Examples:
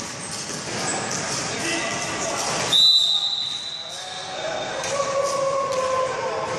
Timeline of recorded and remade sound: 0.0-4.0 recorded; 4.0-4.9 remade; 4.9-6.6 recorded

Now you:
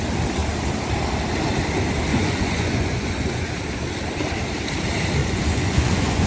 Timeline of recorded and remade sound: 0.0-2.1 recorded; 2.1-3.5 remade; 3.5-5.2 recorded; 5.2-6.3 remade

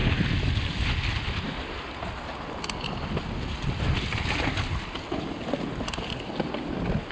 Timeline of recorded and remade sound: 0.0-7.1 recorded

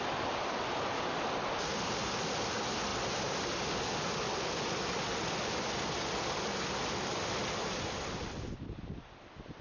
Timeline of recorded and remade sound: 0.0-9.6 recorded

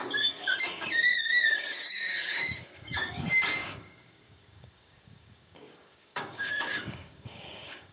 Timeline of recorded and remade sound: 0.0-7.9 remade

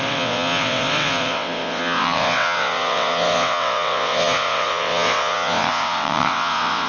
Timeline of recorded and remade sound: 0.0-6.9 remade

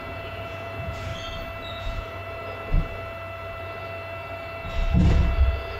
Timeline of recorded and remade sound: 0.0-1.1 remade; 1.1-1.7 recorded; 1.7-2.2 remade; 2.2-5.8 recorded

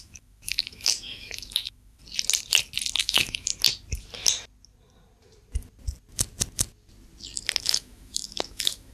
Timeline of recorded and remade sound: 0.0-2.0 remade; 2.0-3.0 recorded; 3.0-3.5 remade; 3.5-7.6 recorded; 7.6-8.9 remade